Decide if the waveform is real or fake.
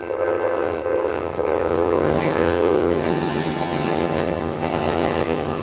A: fake